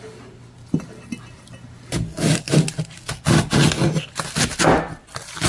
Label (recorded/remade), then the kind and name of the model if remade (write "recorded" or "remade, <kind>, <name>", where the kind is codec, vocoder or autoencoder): recorded